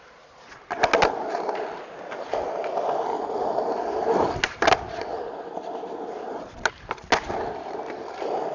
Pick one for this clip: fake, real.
real